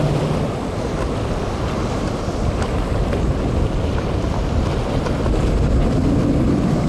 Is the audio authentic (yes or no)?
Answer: yes